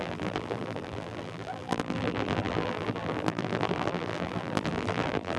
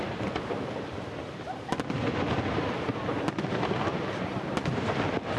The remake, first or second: first